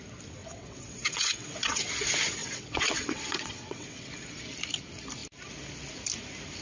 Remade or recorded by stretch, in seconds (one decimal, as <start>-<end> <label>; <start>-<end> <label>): 0.0-0.4 recorded; 0.4-1.9 remade; 1.9-2.4 recorded; 2.4-4.1 remade; 4.1-6.6 recorded